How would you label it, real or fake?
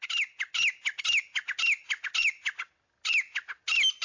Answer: real